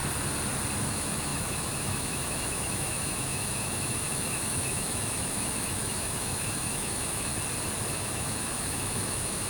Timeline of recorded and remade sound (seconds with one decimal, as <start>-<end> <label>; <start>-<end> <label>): 0.0-0.8 recorded; 0.8-7.3 remade; 7.3-7.9 recorded; 7.9-9.5 remade